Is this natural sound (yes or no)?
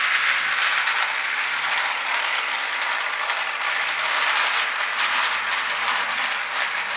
yes